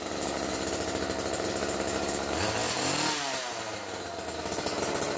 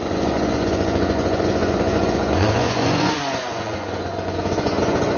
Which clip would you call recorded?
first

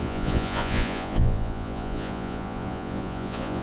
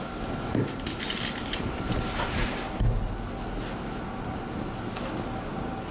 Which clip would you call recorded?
second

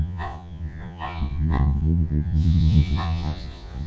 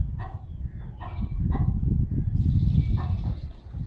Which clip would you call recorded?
second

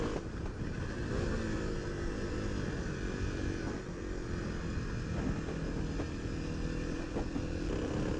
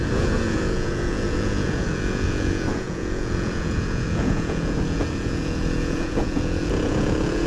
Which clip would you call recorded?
first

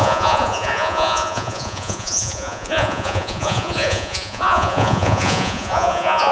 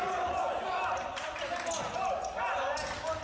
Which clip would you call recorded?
second